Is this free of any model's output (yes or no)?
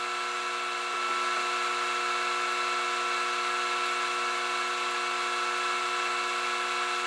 yes